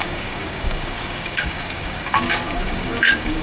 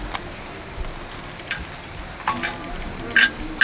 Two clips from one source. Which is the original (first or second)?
second